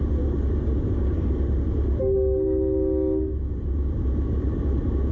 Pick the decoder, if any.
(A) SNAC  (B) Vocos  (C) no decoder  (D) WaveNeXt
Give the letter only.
C